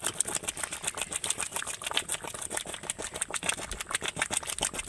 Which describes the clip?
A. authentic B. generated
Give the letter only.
A